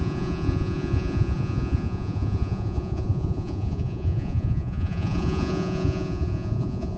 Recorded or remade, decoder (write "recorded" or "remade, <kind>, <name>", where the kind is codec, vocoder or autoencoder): remade, vocoder, Vocos